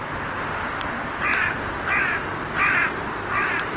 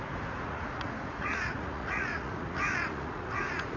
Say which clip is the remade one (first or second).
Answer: second